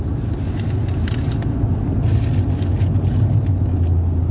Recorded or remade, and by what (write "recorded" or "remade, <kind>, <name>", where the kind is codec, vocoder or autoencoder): recorded